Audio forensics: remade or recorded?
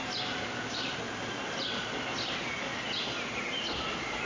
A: recorded